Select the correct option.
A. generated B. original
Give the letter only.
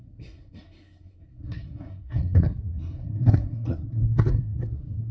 A